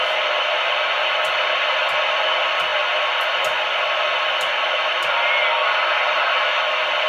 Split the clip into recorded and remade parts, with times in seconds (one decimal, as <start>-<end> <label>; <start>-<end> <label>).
0.0-7.1 recorded